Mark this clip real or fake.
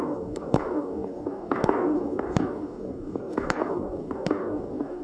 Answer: fake